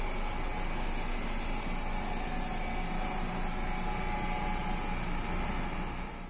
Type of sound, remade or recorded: recorded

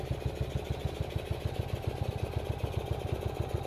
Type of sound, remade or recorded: recorded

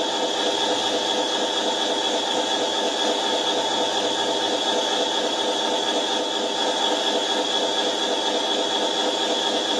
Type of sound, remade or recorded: recorded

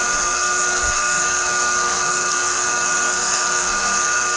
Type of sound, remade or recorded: remade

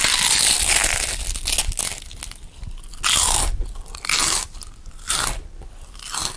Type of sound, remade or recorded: recorded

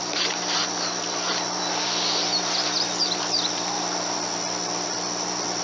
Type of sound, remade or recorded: recorded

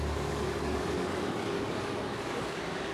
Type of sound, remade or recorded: remade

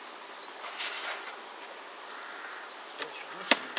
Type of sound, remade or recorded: recorded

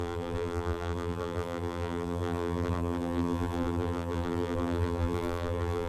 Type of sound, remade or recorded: remade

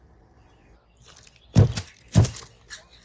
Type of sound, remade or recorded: recorded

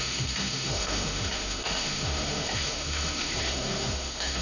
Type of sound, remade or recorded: remade